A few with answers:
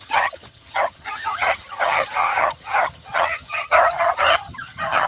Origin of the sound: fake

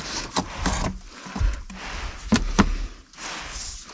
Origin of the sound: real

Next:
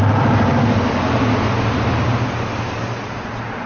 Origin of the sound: real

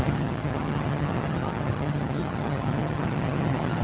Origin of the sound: fake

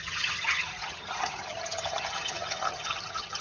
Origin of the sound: fake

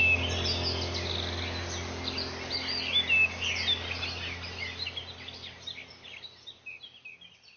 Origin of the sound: real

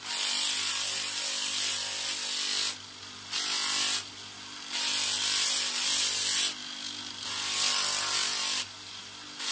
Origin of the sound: real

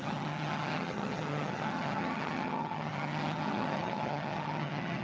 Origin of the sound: fake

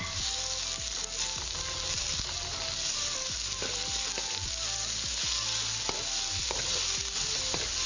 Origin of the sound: real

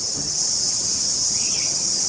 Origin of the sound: fake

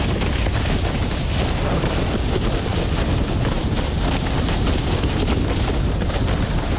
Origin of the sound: real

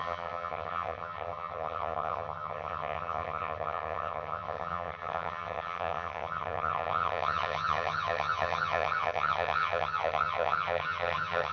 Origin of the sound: fake